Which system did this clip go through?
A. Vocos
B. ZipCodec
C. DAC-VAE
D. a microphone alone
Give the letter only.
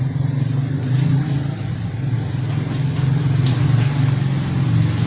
D